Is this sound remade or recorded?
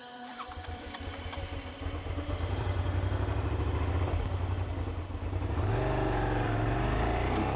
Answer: remade